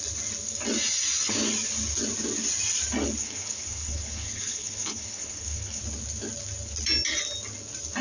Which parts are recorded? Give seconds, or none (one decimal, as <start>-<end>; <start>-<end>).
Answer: 0.0-3.2; 5.8-8.0